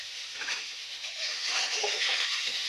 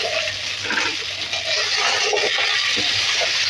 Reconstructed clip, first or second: first